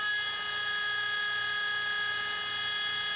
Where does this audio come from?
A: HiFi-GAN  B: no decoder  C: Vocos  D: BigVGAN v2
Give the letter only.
B